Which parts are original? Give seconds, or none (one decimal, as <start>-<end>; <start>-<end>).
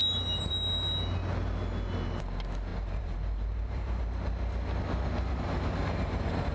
0.0-2.7; 4.0-5.8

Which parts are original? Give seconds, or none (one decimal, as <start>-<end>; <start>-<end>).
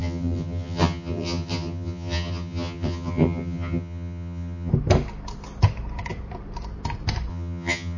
4.7-7.3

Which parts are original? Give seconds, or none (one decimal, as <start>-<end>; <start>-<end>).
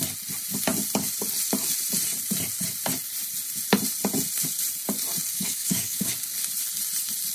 0.0-5.3; 6.1-7.3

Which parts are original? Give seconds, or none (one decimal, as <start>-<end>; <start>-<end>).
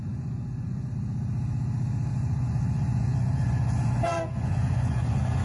0.9-2.1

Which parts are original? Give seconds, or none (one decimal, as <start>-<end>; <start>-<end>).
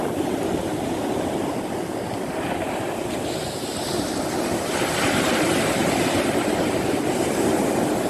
0.0-8.1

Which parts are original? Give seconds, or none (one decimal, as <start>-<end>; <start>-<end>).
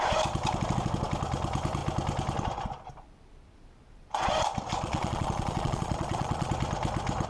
0.0-4.7; 6.5-7.3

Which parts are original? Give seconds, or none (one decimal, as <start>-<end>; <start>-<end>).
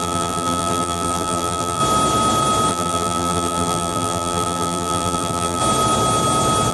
1.8-2.7; 5.6-6.7